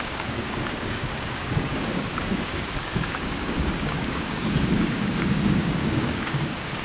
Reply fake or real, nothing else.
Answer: fake